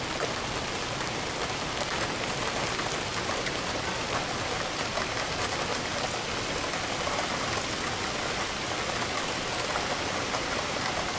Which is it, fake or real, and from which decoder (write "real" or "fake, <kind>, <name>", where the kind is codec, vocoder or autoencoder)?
real